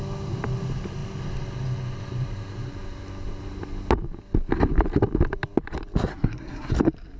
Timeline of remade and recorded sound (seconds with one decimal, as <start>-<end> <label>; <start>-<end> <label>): 0.0-6.1 recorded; 6.1-6.7 remade; 6.7-7.2 recorded